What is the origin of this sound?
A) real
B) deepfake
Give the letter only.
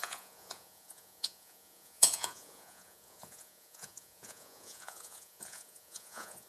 B